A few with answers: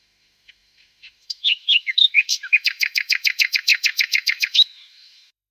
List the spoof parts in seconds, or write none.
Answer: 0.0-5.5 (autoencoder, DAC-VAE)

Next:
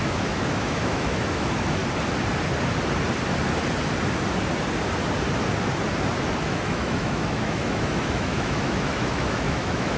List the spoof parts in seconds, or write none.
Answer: 0.0-1.8 (autoencoder, DAC-VAE); 6.4-10.0

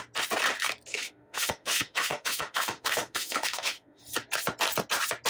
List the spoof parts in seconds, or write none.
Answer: 0.9-4.0 (autoencoder, DAC-VAE)